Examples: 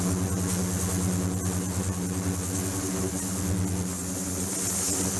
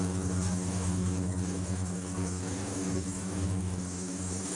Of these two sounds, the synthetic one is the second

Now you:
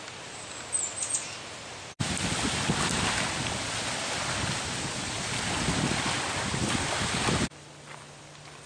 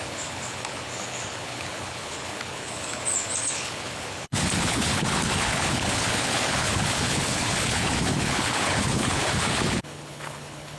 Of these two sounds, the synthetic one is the second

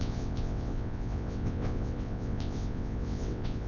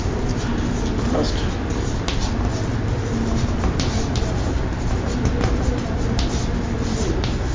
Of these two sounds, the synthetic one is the first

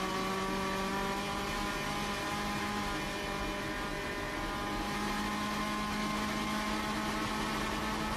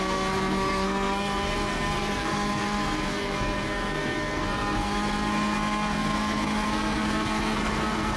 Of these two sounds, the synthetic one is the second